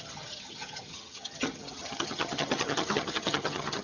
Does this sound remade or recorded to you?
remade